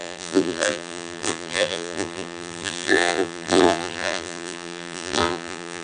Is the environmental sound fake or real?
fake